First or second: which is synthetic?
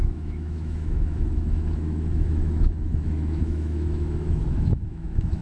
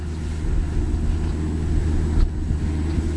first